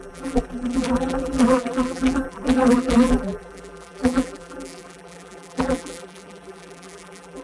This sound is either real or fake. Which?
fake